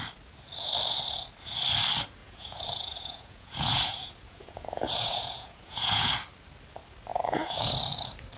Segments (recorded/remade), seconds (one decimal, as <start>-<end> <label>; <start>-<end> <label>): 0.0-2.2 recorded; 2.2-6.1 remade; 6.1-7.1 recorded; 7.1-7.7 remade; 7.7-8.4 recorded